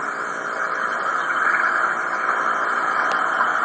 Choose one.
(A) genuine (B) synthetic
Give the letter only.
A